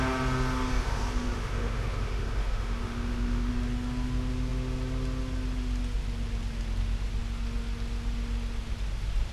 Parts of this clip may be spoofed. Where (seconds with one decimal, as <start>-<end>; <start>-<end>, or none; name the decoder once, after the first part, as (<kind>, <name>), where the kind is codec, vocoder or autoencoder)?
0.8-3.5 (autoencoder, DAC-VAE)